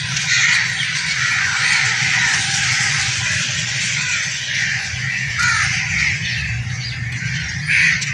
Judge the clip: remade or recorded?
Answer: remade